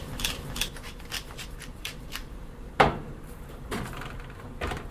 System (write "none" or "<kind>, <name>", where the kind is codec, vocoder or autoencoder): vocoder, BigVGAN v2